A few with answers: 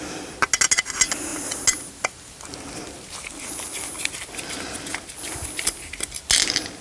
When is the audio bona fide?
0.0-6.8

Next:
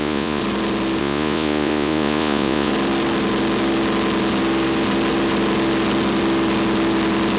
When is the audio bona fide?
0.4-1.0; 2.7-7.4

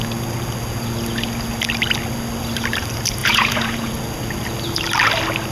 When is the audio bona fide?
0.0-3.2; 3.9-5.5